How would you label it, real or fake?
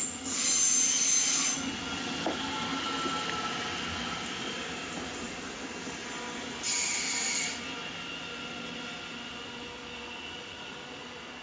real